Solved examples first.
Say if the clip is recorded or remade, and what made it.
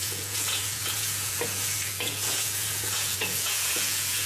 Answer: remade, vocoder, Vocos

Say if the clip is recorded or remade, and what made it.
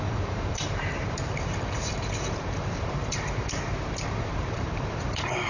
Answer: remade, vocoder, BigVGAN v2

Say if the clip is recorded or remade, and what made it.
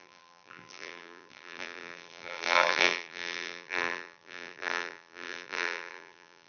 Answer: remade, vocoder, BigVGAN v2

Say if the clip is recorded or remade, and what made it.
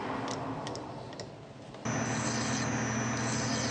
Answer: recorded